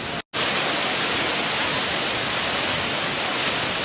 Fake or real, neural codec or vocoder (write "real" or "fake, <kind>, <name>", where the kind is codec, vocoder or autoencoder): real